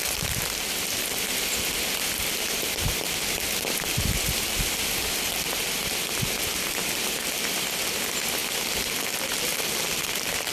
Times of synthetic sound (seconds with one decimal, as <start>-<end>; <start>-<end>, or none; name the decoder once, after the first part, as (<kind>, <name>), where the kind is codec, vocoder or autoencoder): none